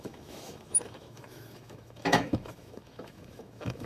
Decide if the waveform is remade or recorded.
remade